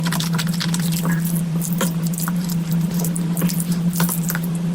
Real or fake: fake